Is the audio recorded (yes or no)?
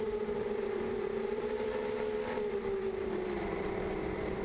no